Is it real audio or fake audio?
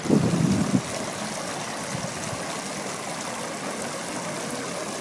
real